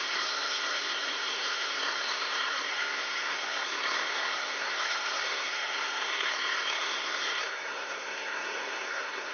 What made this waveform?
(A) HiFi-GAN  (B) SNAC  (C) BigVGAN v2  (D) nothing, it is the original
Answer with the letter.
B